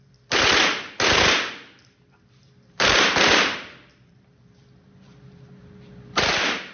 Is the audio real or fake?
real